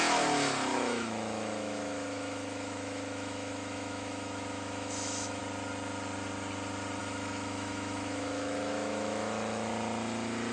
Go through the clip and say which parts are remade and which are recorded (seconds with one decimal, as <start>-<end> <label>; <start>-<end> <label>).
0.0-0.7 recorded; 0.7-5.4 remade; 5.4-7.0 recorded; 7.0-9.7 remade; 9.7-10.5 recorded